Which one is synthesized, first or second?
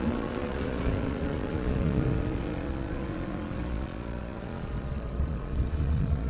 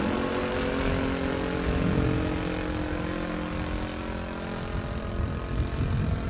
first